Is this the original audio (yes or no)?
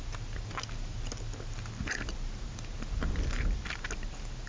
yes